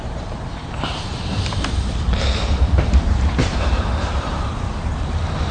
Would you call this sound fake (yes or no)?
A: yes